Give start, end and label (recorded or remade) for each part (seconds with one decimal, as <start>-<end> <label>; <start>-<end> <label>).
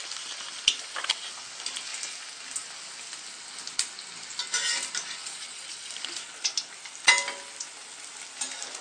0.0-5.2 recorded; 5.2-5.9 remade; 5.9-8.8 recorded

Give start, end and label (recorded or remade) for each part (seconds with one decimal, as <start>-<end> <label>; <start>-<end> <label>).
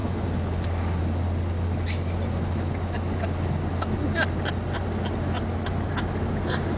0.0-6.8 recorded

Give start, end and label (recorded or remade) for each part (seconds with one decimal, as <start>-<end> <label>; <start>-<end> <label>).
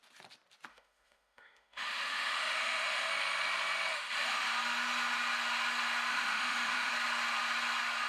0.0-0.7 recorded; 0.7-3.1 remade; 3.1-3.9 recorded; 3.9-4.5 remade; 4.5-6.1 recorded; 6.1-6.9 remade; 6.9-8.1 recorded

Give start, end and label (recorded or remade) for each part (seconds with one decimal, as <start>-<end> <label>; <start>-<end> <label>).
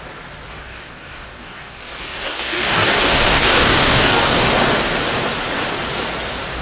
0.0-0.5 recorded; 0.5-4.5 remade; 4.5-6.6 recorded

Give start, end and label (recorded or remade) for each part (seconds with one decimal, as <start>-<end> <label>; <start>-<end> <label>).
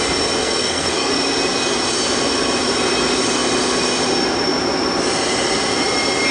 0.0-0.4 recorded; 0.4-1.1 remade; 1.1-6.3 recorded